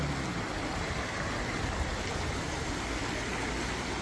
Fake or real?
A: real